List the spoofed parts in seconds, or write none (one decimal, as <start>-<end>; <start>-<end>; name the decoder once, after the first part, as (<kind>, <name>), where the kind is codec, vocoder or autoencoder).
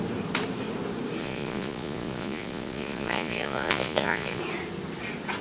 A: 1.2-4.4 (vocoder, Vocos)